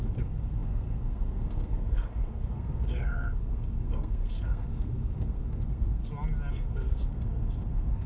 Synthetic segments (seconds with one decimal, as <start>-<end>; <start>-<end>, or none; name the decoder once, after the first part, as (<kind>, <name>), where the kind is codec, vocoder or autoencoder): 0.0-6.0 (codec, SNAC); 6.5-8.1